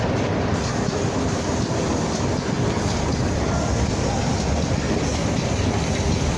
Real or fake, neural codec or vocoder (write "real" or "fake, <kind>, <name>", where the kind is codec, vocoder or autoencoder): real